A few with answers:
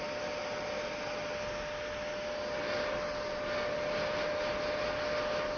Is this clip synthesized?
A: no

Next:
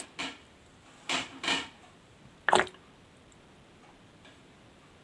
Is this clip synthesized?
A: no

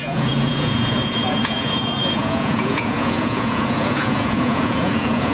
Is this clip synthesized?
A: yes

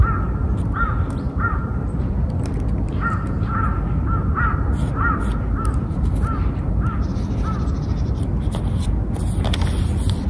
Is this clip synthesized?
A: no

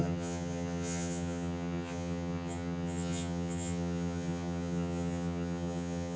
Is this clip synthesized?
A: yes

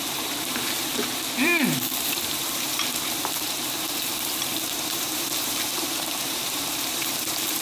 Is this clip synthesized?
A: yes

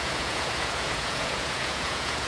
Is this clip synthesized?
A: yes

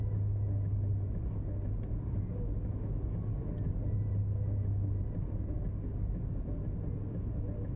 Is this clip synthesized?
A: no